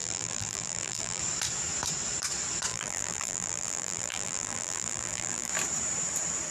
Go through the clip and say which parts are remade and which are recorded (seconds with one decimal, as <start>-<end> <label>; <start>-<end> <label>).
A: 0.0-1.2 remade; 1.2-2.7 recorded; 2.7-5.5 remade; 5.5-6.5 recorded